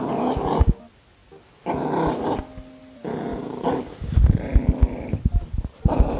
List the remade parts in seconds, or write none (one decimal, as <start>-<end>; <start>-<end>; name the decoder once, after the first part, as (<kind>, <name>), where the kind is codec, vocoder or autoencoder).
3.3-6.2 (vocoder, BigVGAN v2)